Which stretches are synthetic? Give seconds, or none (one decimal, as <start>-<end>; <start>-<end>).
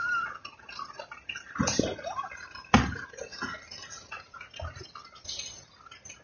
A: 3.3-4.5